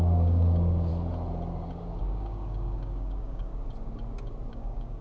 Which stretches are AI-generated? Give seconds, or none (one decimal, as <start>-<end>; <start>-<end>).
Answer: 0.0-0.9; 2.0-3.5; 4.5-5.0